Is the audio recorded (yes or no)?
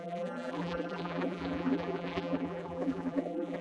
no